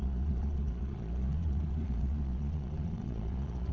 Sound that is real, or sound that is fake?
fake